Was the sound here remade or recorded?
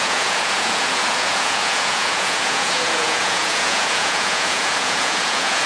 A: remade